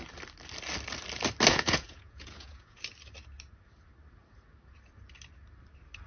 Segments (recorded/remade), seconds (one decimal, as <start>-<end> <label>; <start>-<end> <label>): 0.0-1.5 recorded; 1.5-2.8 remade; 2.8-6.1 recorded